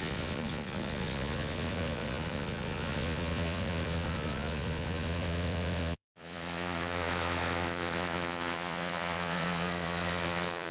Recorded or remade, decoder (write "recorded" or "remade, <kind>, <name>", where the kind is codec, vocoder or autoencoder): remade, vocoder, Vocos